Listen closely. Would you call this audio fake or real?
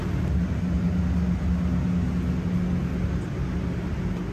real